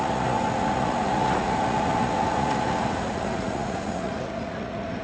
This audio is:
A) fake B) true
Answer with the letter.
A